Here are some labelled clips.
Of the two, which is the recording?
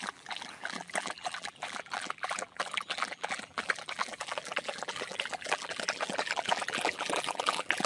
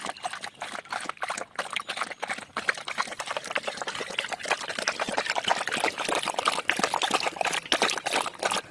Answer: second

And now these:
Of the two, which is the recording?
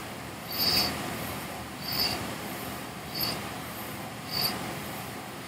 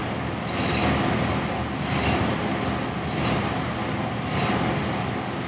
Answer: second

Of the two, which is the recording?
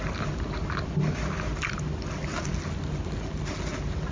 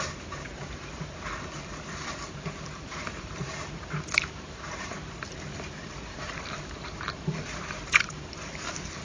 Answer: first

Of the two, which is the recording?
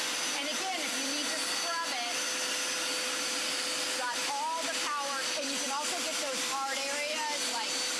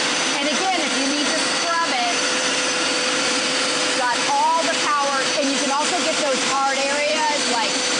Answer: first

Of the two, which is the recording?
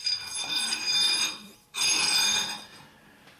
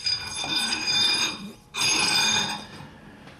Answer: first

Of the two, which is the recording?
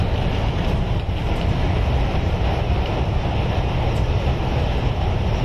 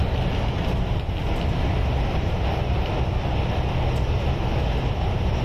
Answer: second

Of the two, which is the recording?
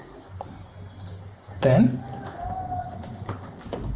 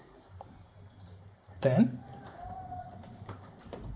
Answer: first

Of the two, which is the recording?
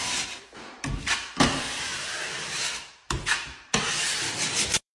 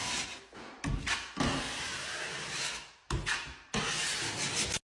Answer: second